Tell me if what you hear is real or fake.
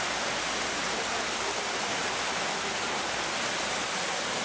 real